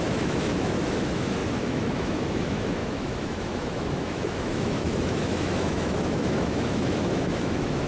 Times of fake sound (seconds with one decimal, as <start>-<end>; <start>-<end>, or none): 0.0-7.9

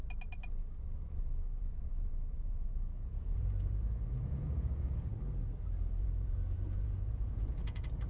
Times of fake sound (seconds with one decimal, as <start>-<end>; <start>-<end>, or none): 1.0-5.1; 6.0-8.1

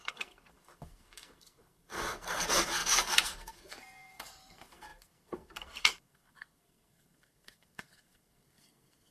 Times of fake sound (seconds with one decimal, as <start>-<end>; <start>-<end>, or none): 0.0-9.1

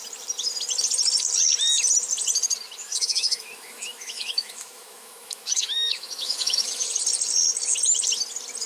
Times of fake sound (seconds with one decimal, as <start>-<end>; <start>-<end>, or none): 2.8-7.0

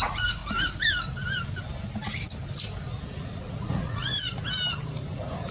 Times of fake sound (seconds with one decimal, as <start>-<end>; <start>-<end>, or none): 0.0-0.4; 3.0-4.1

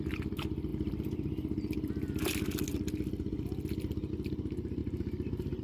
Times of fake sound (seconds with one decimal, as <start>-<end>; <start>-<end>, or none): none

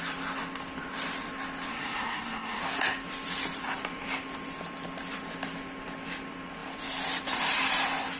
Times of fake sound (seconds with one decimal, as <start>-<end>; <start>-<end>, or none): 1.7-2.6